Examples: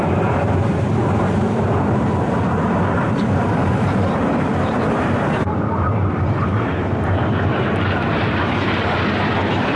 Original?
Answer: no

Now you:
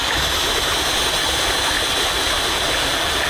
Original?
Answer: yes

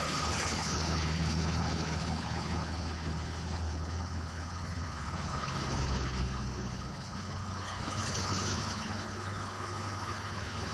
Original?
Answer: no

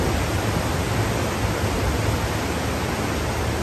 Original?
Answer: yes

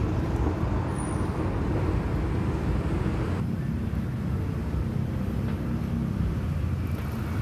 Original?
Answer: yes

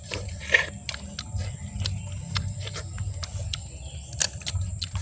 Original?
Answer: yes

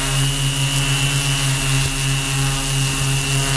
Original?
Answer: yes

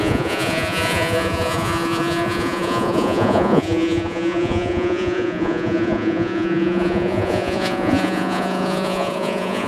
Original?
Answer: no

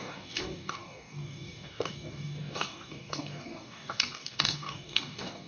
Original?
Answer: no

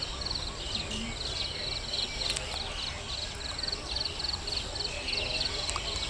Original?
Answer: yes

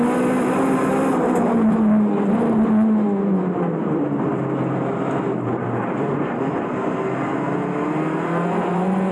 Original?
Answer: yes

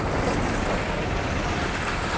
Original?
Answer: yes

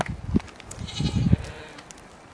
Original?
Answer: yes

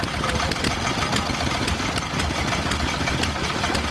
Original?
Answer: yes